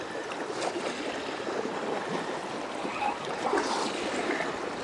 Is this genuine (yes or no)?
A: yes